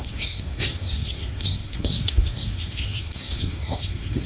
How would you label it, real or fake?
fake